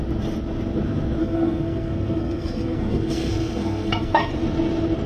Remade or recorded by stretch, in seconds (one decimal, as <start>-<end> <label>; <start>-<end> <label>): 0.0-1.2 recorded; 1.2-4.3 remade; 4.3-5.1 recorded